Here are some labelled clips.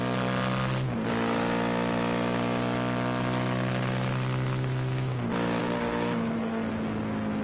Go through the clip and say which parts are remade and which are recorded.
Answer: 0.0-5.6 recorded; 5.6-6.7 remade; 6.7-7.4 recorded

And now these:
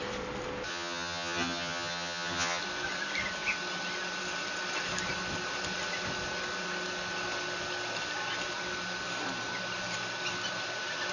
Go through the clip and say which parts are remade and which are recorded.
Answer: 0.0-0.7 recorded; 0.7-2.6 remade; 2.6-11.1 recorded

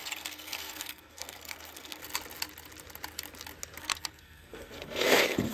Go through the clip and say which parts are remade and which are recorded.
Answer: 0.0-2.0 remade; 2.0-3.8 recorded; 3.8-5.5 remade

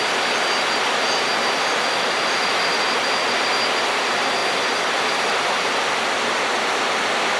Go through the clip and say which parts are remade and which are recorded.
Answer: 0.0-7.4 recorded

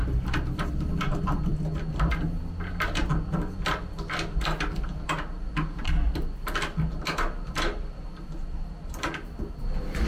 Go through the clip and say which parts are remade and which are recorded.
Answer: 0.0-10.1 recorded

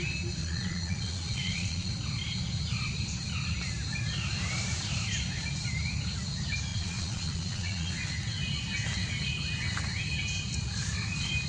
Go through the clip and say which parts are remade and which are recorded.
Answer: 0.0-0.4 recorded; 0.4-1.9 remade; 1.9-6.7 recorded; 6.7-7.9 remade; 7.9-11.5 recorded

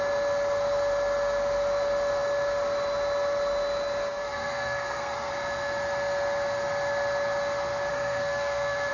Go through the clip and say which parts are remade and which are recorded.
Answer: 0.0-4.2 recorded; 4.2-5.3 remade; 5.3-7.9 recorded; 7.9-8.9 remade

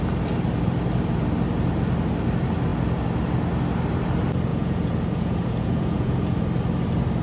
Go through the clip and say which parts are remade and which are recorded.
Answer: 0.0-4.5 recorded; 4.5-6.4 remade; 6.4-7.2 recorded